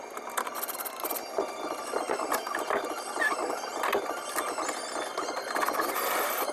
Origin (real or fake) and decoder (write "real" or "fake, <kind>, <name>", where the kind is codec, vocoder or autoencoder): real